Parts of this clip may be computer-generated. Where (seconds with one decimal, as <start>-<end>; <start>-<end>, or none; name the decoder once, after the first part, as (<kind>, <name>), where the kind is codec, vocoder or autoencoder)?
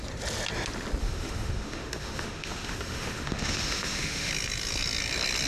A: 1.0-4.3 (autoencoder, DAC-VAE)